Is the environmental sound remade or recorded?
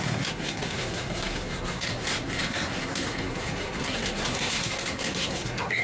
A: remade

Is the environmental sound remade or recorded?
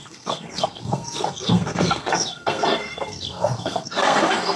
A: remade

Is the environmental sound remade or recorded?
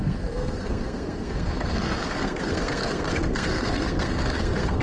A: remade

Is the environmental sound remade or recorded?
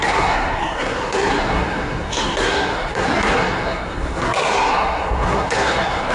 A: remade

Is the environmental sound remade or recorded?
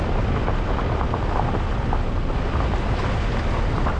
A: recorded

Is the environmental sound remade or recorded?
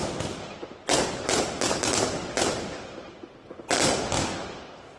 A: recorded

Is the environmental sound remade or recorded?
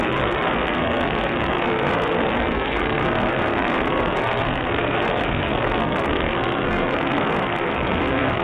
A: remade